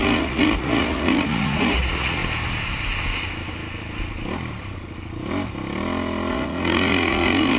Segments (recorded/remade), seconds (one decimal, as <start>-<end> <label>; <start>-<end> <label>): 0.0-2.2 remade; 2.2-6.3 recorded; 6.3-7.6 remade

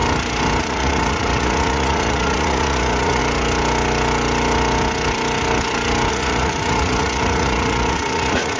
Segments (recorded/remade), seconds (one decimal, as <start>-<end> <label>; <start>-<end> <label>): 0.0-0.6 recorded; 0.6-3.2 remade; 3.2-6.1 recorded; 6.1-8.6 remade

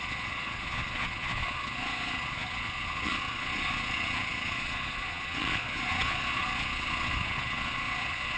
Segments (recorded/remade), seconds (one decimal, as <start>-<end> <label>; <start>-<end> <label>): 0.0-8.4 remade

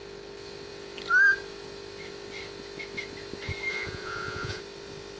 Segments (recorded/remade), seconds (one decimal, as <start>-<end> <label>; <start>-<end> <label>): 0.0-3.7 recorded; 3.7-4.6 remade; 4.6-5.2 recorded

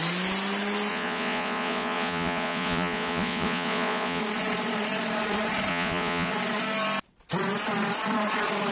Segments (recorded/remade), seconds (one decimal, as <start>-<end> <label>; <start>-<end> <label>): 0.0-0.9 recorded; 0.9-4.2 remade; 4.2-5.7 recorded; 5.7-6.3 remade; 6.3-8.7 recorded

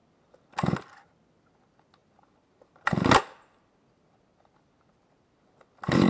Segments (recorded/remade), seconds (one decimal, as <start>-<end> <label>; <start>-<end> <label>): 0.0-6.1 recorded

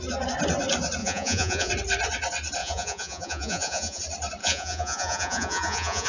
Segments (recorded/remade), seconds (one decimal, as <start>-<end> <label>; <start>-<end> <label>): 0.0-1.0 recorded; 1.0-1.7 remade; 1.7-2.6 recorded; 2.6-4.0 remade; 4.0-4.4 recorded; 4.4-6.1 remade

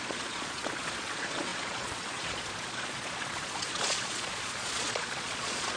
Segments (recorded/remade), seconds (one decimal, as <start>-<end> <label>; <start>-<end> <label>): 0.0-5.8 remade